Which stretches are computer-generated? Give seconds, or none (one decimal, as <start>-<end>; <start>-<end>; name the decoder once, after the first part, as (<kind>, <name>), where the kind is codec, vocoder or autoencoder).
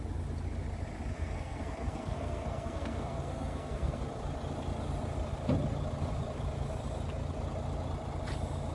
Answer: 1.1-4.0 (codec, SNAC)